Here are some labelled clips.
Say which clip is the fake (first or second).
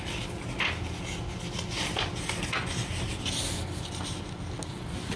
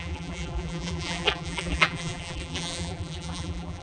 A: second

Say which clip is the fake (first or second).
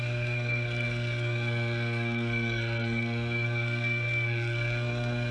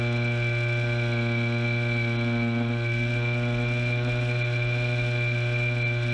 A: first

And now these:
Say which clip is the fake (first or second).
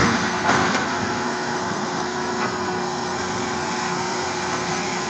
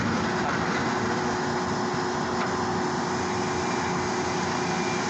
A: first